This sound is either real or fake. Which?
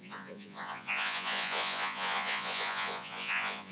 fake